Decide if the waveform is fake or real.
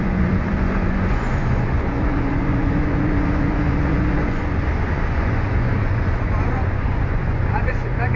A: fake